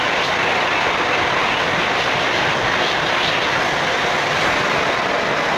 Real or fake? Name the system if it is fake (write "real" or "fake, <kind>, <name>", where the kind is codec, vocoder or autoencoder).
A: real